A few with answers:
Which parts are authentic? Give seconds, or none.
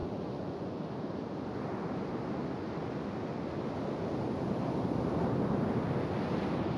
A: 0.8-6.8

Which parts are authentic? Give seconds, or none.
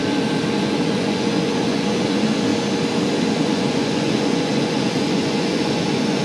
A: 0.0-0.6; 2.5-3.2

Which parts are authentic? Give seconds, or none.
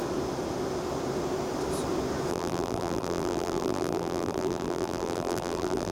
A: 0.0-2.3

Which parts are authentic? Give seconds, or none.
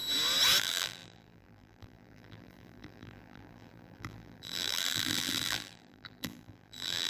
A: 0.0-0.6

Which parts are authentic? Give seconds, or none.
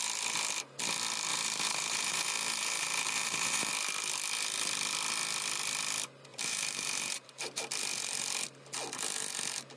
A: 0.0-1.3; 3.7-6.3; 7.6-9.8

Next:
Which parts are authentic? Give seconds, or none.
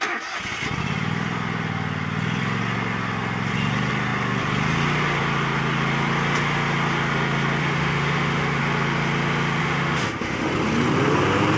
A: 0.0-7.6; 8.6-9.6; 10.5-11.6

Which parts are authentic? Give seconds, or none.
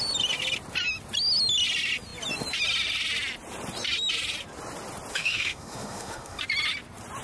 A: 0.0-5.1; 6.4-7.2